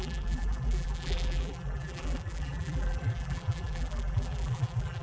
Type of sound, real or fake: fake